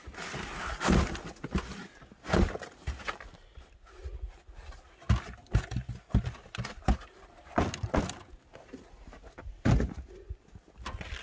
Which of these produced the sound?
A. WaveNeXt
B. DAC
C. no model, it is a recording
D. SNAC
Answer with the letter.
C